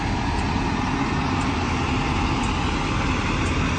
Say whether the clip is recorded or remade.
recorded